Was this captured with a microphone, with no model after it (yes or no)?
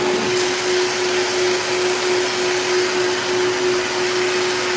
yes